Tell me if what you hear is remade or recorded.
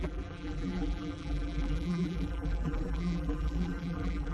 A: remade